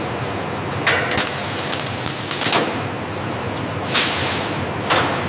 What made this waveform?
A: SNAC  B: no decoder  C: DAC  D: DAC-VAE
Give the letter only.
B